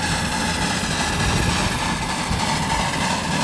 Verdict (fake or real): real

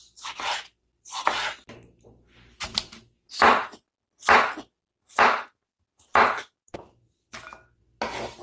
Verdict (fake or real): real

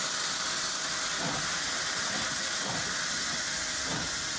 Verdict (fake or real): real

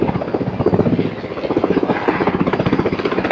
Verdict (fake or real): real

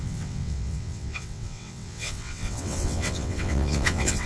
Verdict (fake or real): fake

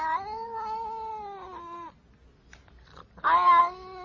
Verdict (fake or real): real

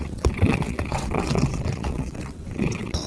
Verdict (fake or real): fake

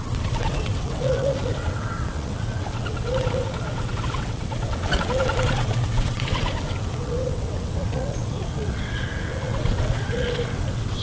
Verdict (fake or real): fake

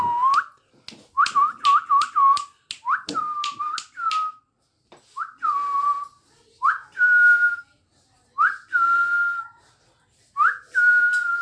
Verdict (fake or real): real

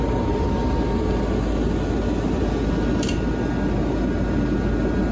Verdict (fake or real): real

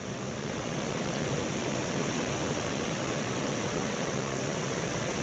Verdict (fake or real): fake